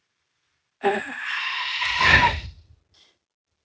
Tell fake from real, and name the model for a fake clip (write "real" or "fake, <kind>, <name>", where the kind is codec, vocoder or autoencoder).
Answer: real